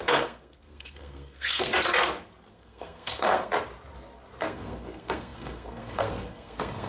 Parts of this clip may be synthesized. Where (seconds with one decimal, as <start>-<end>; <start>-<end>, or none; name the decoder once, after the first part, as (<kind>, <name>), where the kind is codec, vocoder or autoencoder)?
0.0-1.7 (codec, SNAC); 2.5-3.5; 4.4-6.9